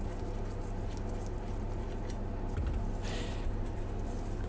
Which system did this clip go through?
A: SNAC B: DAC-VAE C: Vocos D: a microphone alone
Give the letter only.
D